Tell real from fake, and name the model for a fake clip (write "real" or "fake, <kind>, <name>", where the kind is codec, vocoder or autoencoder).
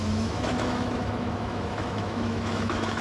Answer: fake, autoencoder, DAC-VAE